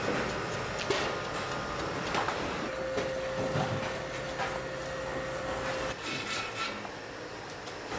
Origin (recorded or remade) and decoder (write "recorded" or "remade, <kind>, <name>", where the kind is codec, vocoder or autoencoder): recorded